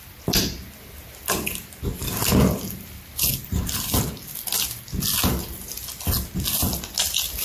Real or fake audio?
real